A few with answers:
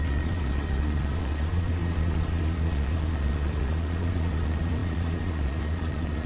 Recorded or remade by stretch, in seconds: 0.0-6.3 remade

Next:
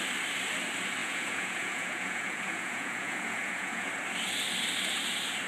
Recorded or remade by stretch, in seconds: 0.0-1.0 recorded; 1.0-3.9 remade; 3.9-5.5 recorded

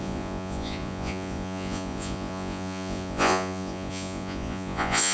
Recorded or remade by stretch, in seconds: 0.0-5.1 remade

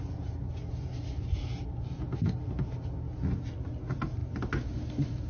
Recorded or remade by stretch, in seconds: 0.0-5.3 recorded